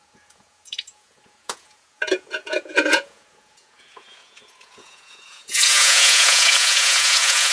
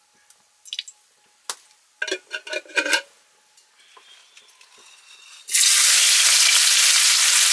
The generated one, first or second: first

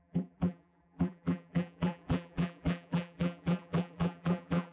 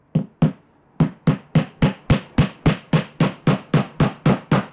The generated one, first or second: first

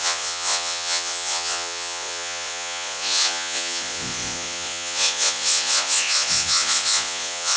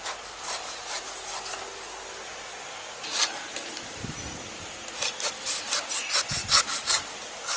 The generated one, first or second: first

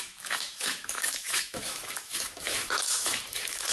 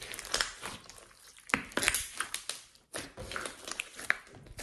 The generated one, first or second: first